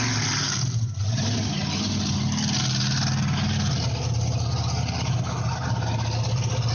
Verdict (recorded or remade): recorded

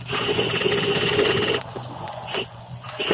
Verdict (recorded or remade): remade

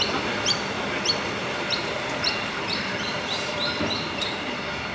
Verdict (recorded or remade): recorded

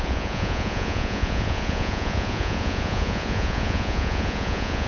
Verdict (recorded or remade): remade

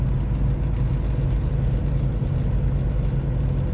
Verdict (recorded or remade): recorded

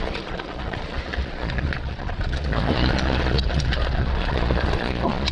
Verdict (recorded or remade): remade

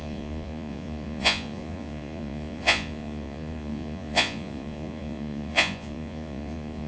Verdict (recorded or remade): remade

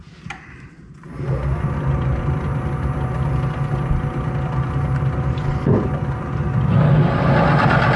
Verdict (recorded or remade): recorded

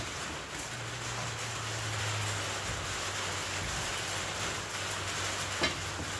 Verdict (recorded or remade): recorded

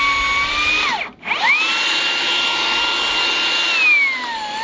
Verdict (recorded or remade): recorded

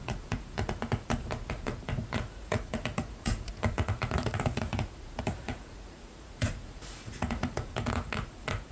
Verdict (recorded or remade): remade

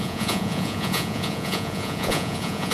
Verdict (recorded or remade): remade